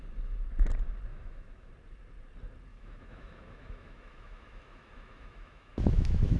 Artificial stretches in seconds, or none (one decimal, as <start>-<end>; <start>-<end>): 1.1-1.7; 2.7-6.4